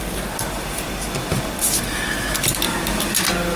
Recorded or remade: recorded